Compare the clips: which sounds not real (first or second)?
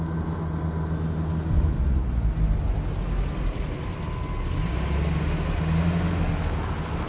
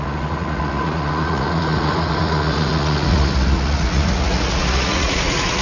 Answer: second